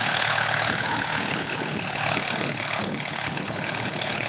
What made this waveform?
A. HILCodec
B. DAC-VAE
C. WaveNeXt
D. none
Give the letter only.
A